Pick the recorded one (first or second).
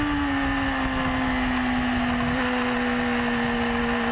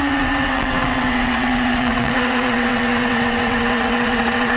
first